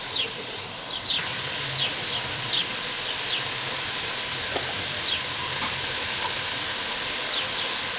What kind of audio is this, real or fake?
real